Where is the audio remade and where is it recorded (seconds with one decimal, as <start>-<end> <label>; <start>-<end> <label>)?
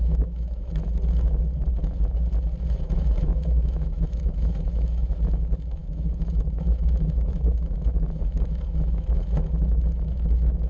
0.0-0.8 remade; 0.8-2.7 recorded; 2.7-10.7 remade